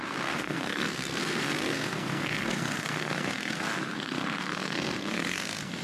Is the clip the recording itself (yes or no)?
no